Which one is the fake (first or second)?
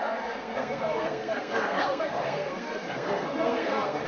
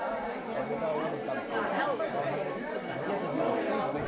first